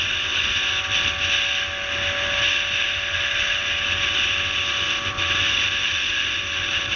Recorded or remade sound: recorded